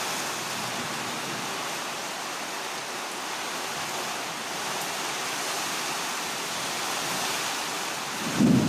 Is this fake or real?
real